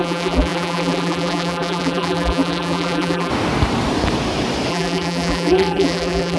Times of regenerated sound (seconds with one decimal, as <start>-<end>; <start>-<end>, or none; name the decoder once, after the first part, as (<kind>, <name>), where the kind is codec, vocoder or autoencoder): 0.0-3.3 (vocoder, BigVGAN v2); 4.7-6.4